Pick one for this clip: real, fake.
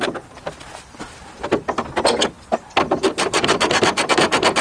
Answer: real